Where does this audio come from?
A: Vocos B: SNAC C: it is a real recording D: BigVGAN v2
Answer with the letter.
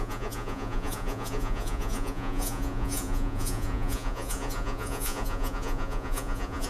A